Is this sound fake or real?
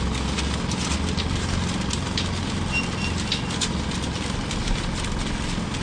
real